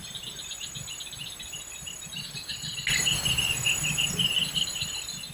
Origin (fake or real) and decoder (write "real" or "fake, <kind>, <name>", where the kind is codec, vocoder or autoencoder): real